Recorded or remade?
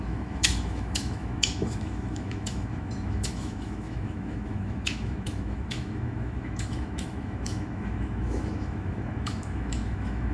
remade